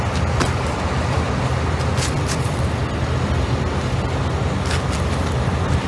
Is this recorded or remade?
recorded